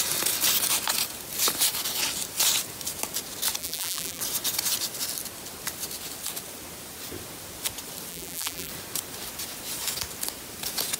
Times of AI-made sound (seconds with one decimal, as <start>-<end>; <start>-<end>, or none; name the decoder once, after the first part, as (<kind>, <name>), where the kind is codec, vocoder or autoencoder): 3.6-4.2 (vocoder, BigVGAN v2); 8.1-8.7